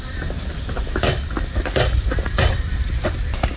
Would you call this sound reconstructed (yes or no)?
no